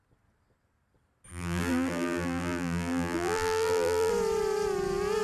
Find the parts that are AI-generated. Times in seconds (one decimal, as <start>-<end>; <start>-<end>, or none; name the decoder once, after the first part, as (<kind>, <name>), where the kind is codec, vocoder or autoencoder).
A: 1.3-4.1 (vocoder, BigVGAN v2)